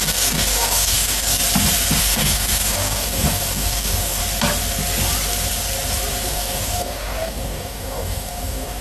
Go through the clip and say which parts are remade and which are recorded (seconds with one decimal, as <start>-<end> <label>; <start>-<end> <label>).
0.0-1.4 remade; 1.4-2.0 recorded; 2.0-4.2 remade; 4.2-6.3 recorded; 6.3-8.8 remade